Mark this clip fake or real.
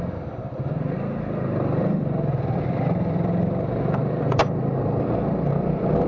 fake